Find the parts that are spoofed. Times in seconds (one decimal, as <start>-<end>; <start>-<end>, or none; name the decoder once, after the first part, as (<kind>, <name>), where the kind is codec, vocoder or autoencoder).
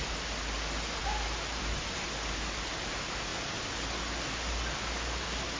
none